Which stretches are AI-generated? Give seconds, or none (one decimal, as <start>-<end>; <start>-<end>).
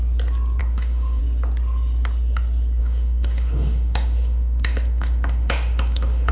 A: 0.6-1.2; 2.8-6.3